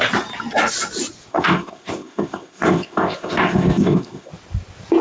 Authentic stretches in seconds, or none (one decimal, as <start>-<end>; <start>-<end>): 0.0-1.3; 4.3-5.0